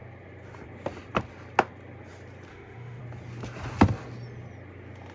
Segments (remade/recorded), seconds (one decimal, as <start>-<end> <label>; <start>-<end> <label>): 0.0-2.5 recorded; 2.5-3.0 remade; 3.0-5.1 recorded